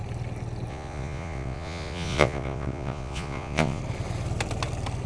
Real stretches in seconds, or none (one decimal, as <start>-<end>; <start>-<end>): 0.0-0.7; 3.8-5.1